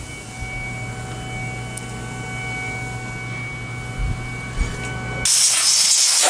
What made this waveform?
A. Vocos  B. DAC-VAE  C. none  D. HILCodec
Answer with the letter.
C